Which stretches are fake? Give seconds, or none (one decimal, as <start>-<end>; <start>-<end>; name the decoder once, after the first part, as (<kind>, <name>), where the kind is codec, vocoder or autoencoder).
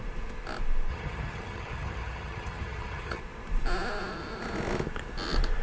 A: 0.9-3.2 (vocoder, HiFi-GAN)